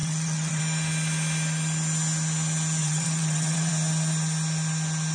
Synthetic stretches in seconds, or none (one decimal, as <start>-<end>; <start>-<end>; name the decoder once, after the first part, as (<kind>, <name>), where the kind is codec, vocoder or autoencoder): 0.0-0.6 (vocoder, WaveNeXt); 2.8-3.7